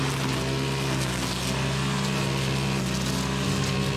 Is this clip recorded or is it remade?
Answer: recorded